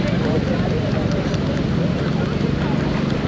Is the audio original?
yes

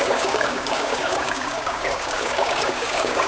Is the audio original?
no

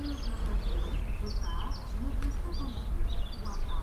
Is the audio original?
yes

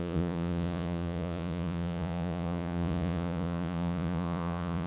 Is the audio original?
no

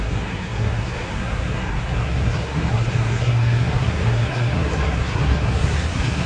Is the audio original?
no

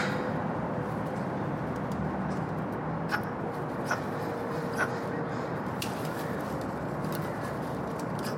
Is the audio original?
yes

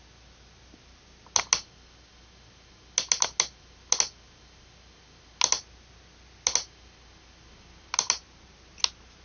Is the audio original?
yes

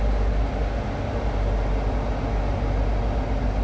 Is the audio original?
yes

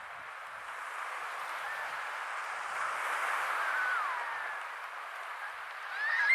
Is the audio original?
yes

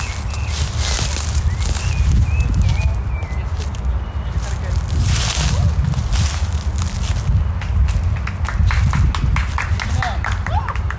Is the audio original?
yes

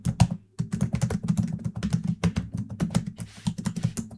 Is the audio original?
yes